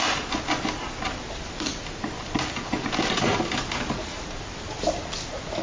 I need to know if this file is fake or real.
real